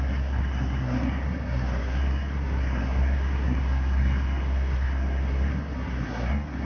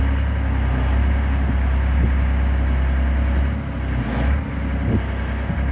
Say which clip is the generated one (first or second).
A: first